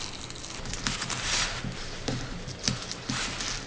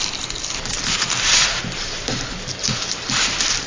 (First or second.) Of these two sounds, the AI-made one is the second